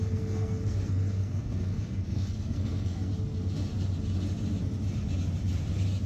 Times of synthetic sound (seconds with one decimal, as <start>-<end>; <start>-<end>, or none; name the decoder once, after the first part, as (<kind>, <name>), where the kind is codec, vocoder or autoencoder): 0.0-3.1 (codec, SNAC)